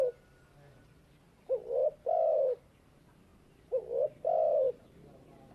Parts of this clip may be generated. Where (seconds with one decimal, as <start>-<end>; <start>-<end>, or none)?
none